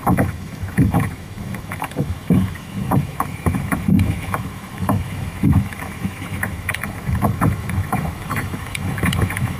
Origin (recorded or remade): remade